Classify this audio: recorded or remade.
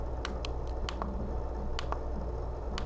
recorded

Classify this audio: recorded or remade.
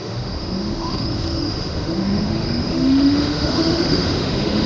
remade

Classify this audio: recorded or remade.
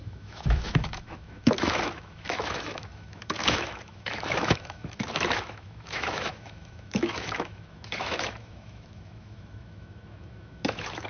remade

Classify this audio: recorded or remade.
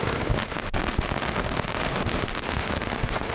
remade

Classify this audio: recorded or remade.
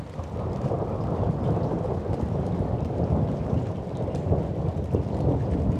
recorded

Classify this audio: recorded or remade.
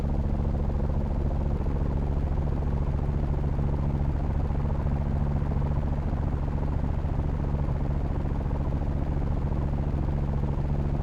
recorded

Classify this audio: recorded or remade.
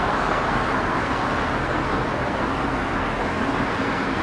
remade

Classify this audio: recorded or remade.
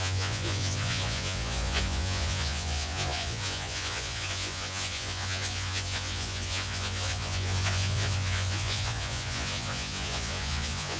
remade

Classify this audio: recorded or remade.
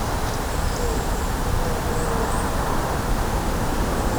remade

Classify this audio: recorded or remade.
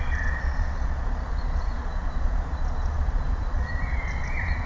remade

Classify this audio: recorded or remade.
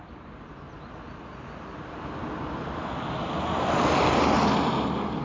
recorded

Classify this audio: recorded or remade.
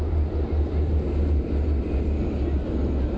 recorded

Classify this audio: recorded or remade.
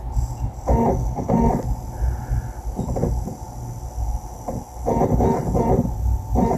recorded